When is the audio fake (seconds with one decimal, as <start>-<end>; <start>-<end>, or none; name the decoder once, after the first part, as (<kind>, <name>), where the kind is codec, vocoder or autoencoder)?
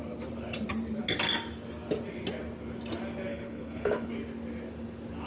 3.3-4.1 (codec, HILCodec)